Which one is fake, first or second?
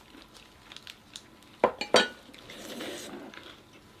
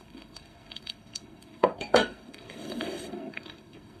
second